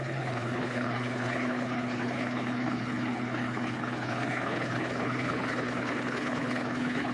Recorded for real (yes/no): no